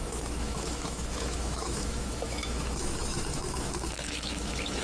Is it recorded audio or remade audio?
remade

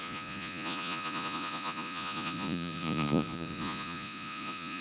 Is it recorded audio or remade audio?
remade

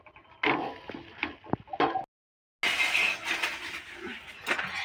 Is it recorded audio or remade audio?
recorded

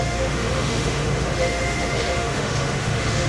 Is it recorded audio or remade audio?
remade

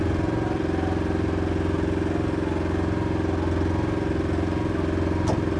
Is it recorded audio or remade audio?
recorded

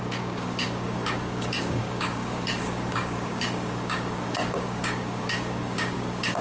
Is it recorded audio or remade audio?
remade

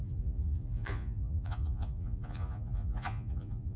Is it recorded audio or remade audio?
remade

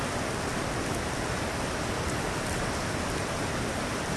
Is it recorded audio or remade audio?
recorded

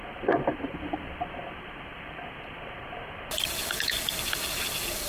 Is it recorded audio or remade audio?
remade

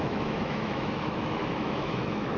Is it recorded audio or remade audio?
remade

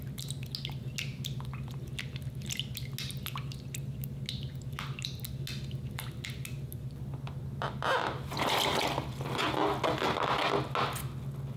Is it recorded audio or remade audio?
recorded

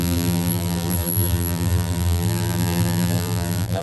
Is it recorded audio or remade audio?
remade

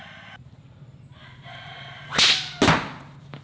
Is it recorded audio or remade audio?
recorded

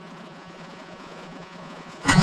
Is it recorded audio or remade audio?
remade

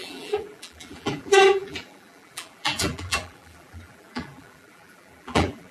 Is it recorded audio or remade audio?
remade